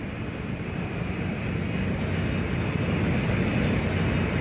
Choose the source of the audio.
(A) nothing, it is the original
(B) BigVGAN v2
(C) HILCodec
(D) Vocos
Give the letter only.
A